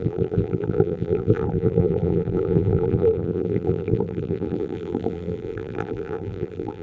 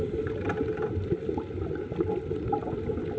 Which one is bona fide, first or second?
second